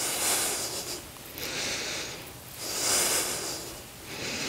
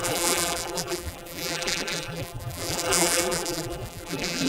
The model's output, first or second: second